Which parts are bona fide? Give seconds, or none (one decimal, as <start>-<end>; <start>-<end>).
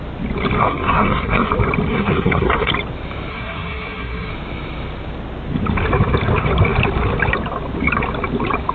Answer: 0.0-0.6; 1.5-1.9; 2.7-3.3; 4.3-8.7